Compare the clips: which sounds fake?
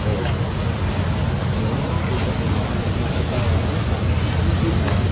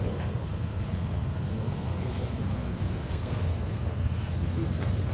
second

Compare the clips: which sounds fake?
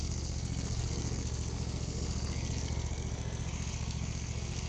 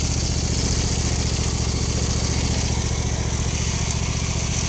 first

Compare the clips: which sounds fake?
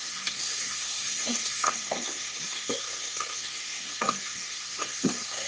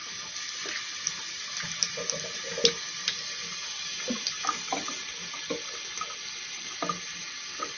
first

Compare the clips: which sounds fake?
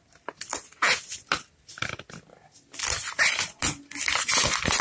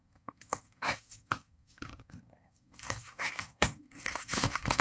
second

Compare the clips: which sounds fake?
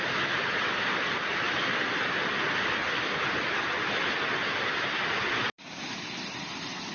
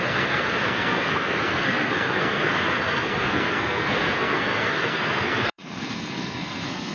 second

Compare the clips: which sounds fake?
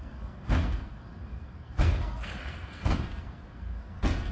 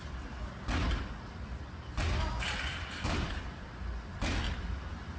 first